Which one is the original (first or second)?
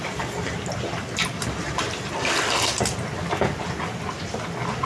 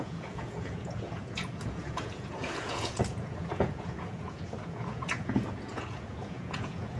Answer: first